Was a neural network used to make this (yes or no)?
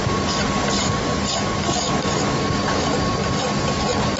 no